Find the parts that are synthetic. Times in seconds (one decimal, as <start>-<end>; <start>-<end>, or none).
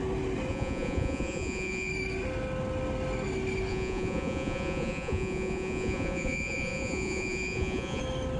0.5-1.9; 3.7-8.0